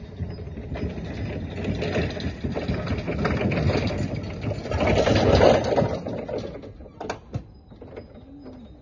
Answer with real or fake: real